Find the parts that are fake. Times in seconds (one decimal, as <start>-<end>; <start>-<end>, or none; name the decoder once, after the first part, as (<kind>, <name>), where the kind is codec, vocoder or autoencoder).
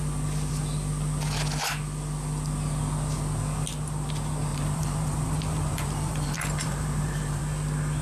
4.5-7.4 (vocoder, BigVGAN v2)